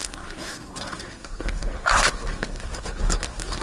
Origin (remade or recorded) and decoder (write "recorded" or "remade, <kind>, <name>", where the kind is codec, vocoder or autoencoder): remade, codec, SNAC